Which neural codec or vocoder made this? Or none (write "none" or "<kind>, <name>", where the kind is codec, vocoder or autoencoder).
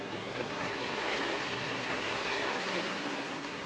codec, SNAC